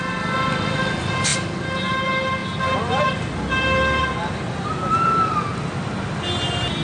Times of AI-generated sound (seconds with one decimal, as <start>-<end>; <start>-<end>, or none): none